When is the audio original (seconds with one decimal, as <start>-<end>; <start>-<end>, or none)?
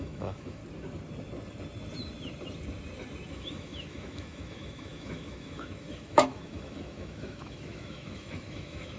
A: 0.6-3.3